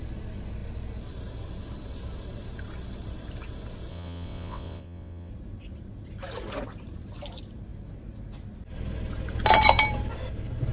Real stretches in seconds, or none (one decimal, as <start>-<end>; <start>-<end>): 0.0-3.9; 5.3-10.7